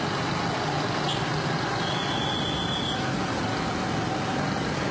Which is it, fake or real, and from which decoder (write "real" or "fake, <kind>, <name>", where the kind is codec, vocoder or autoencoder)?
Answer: real